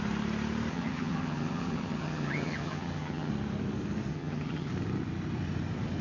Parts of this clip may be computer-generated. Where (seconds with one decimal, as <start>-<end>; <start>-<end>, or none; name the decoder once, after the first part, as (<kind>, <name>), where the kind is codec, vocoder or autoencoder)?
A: 0.7-3.3 (vocoder, HiFi-GAN); 4.1-4.7